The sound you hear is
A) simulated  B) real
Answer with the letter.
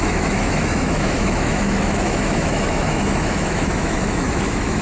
A